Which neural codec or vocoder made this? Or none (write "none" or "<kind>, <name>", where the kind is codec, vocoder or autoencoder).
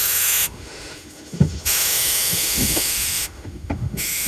autoencoder, DAC-VAE